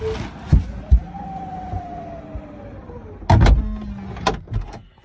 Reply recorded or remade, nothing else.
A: recorded